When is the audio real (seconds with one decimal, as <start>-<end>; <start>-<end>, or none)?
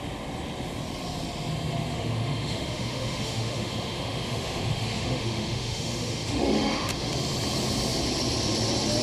0.0-1.9; 7.1-9.0